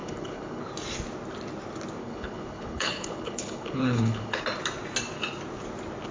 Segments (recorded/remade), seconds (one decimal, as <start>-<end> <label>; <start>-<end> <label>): 0.0-0.6 remade; 0.6-2.0 recorded; 2.0-4.4 remade; 4.4-6.1 recorded